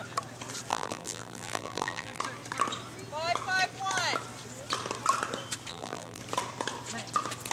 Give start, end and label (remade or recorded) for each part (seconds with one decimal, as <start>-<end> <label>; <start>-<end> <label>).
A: 0.0-0.7 recorded; 0.7-2.2 remade; 2.2-5.7 recorded; 5.7-6.2 remade; 6.2-7.5 recorded